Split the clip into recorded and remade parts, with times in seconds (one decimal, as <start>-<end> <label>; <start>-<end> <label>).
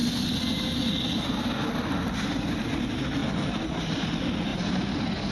0.0-5.3 recorded